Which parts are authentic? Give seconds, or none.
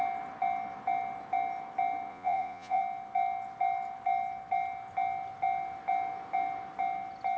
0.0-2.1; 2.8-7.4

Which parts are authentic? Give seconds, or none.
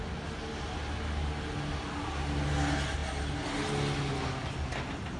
0.0-5.2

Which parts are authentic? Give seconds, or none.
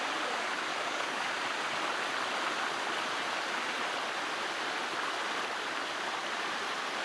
0.0-0.7; 1.3-7.0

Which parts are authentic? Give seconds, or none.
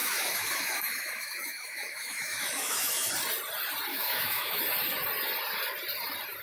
3.1-3.9; 4.6-6.4